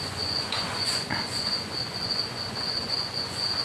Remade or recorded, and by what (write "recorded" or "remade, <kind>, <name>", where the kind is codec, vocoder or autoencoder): remade, vocoder, Vocos